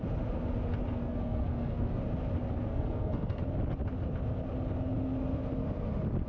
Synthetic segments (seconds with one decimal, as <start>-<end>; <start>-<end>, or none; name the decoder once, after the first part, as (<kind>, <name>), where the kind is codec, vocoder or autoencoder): 1.0-2.0 (codec, SNAC); 2.7-3.4